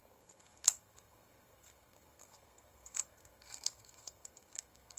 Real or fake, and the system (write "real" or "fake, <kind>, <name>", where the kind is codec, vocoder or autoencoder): fake, codec, SNAC